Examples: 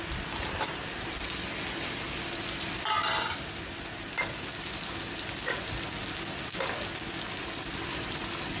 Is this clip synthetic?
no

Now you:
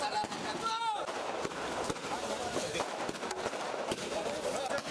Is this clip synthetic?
no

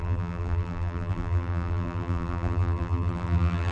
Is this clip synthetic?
yes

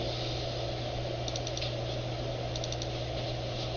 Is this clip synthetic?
no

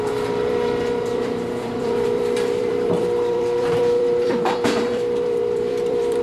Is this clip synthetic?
yes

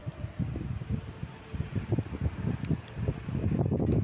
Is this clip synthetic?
no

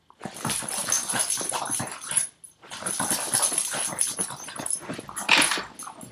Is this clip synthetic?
no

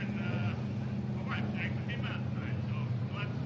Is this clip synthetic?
no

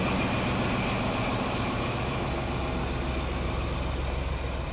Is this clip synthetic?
no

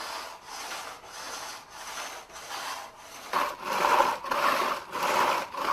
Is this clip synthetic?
no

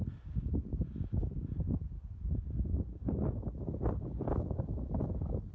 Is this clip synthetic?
no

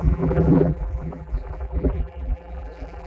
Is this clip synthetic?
yes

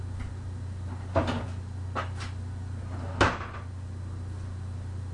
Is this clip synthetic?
no